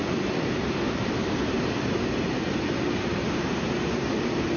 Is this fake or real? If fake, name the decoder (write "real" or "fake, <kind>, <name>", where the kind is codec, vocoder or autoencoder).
fake, vocoder, BigVGAN v2